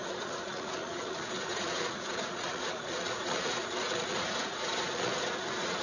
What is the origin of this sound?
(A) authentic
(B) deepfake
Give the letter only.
B